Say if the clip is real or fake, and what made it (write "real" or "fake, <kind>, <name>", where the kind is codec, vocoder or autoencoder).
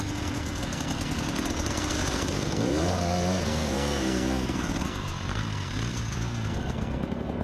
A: fake, codec, SNAC